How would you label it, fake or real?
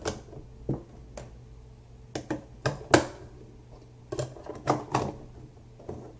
real